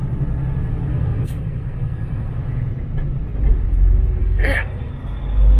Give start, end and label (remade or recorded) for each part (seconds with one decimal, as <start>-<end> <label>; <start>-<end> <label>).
0.0-0.9 recorded; 0.9-2.3 remade; 2.3-4.2 recorded; 4.2-4.9 remade; 4.9-5.6 recorded